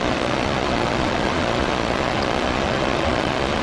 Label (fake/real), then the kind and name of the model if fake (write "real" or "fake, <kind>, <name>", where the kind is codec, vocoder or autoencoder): fake, vocoder, Vocos